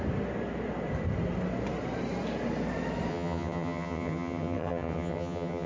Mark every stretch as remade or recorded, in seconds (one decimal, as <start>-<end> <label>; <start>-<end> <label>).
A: 0.0-3.1 recorded; 3.1-5.7 remade